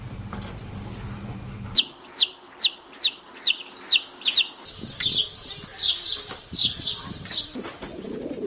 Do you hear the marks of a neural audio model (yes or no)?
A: no